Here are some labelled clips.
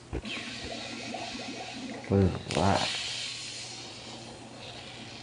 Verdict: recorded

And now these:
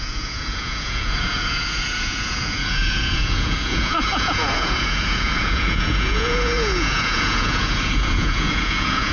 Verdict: remade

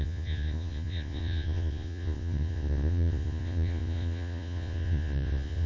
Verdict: remade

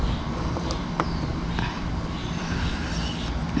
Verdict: recorded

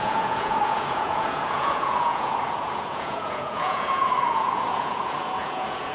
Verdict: remade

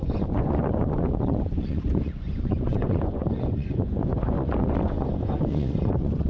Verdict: remade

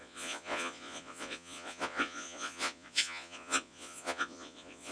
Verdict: remade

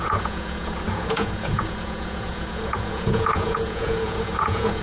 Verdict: remade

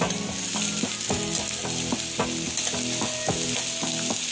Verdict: recorded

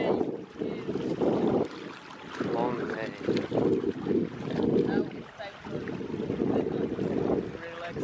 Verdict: recorded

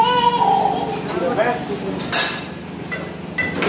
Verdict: recorded